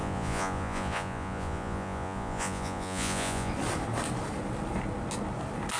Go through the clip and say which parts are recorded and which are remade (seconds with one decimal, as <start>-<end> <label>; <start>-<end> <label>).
0.0-3.5 remade; 3.5-5.8 recorded